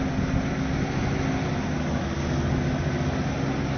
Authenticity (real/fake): real